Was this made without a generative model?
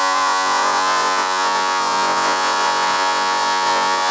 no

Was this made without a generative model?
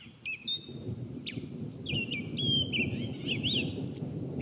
yes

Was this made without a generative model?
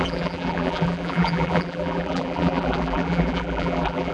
no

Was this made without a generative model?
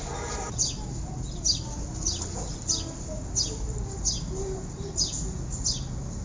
yes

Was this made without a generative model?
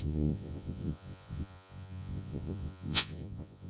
no